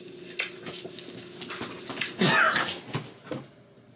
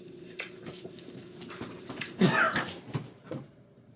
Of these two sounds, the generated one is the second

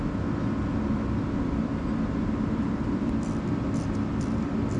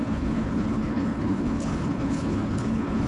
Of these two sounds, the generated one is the second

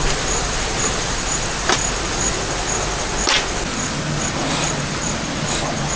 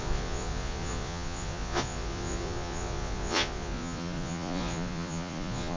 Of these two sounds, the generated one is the second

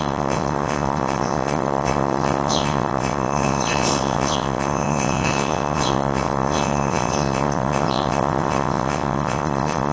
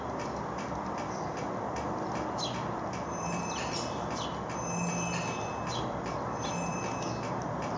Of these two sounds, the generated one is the first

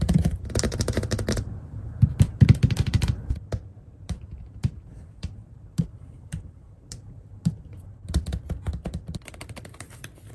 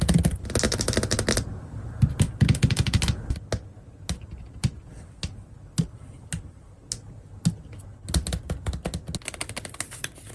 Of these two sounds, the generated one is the first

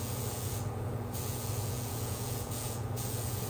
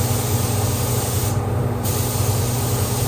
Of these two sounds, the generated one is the first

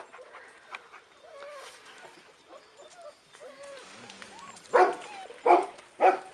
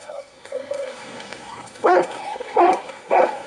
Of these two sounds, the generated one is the second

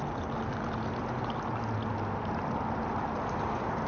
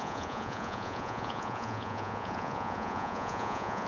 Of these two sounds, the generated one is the second